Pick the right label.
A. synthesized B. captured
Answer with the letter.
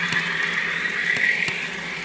B